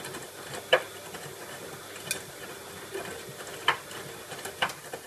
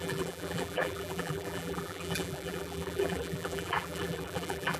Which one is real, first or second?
first